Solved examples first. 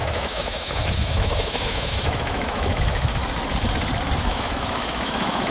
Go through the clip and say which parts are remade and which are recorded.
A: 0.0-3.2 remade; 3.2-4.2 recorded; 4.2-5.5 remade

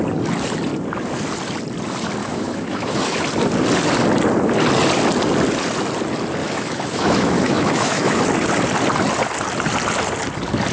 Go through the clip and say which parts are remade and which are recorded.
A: 0.0-2.2 recorded; 2.2-3.2 remade; 3.2-6.4 recorded; 6.4-8.2 remade; 8.2-10.7 recorded

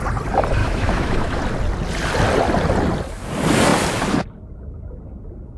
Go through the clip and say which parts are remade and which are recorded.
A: 0.0-0.6 recorded; 0.6-1.4 remade; 1.4-5.6 recorded

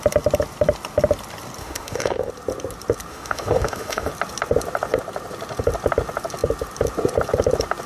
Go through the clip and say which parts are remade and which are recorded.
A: 0.0-1.6 recorded; 1.6-2.3 remade; 2.3-3.1 recorded; 3.1-4.1 remade; 4.1-7.9 recorded

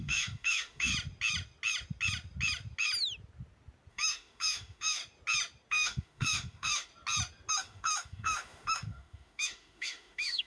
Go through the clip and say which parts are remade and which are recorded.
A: 0.0-0.9 remade; 0.9-3.9 recorded; 3.9-5.0 remade; 5.0-5.7 recorded; 5.7-6.9 remade; 6.9-7.5 recorded; 7.5-10.5 remade

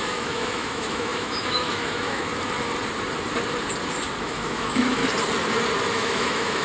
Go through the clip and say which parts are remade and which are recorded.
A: 0.0-2.3 remade; 2.3-4.2 recorded; 4.2-5.0 remade; 5.0-5.9 recorded; 5.9-6.6 remade